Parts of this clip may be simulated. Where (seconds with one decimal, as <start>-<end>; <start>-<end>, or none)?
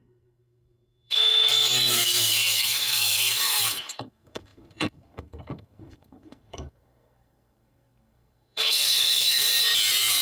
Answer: 0.0-9.5